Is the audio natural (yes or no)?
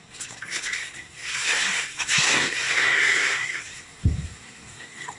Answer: no